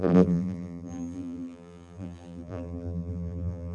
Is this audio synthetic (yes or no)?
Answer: yes